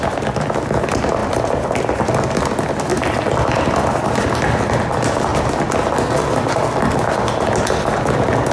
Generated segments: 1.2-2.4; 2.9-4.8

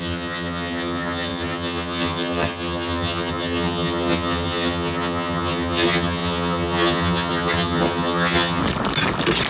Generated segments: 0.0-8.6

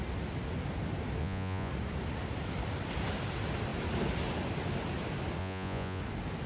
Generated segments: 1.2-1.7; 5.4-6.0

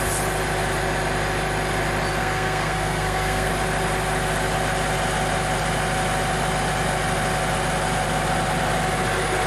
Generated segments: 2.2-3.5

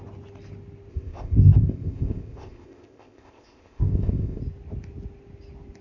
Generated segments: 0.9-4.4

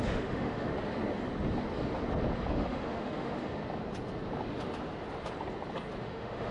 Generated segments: 0.0-0.7; 2.5-3.6; 6.0-6.5